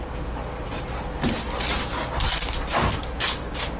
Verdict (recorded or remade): recorded